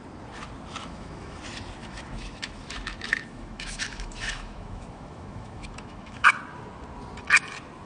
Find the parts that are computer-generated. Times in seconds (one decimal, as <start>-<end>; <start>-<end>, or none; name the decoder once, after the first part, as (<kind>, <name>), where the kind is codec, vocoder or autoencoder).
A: 0.8-1.4 (autoencoder, DAC-VAE); 1.8-6.3